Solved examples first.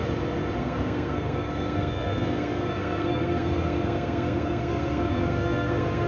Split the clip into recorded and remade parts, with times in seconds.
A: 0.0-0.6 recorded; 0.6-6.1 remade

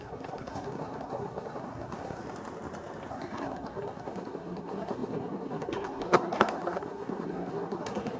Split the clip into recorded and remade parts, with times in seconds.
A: 0.0-2.2 remade; 2.2-3.1 recorded; 3.1-8.2 remade

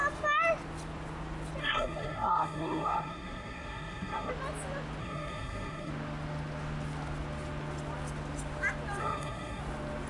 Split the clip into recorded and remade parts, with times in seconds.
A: 0.0-1.6 recorded; 1.6-4.3 remade; 4.3-5.0 recorded; 5.0-5.9 remade; 5.9-9.0 recorded; 9.0-9.6 remade; 9.6-10.1 recorded